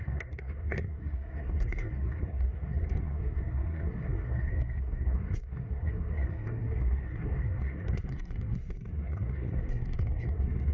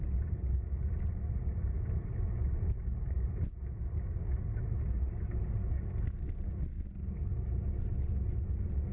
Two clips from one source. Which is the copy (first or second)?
first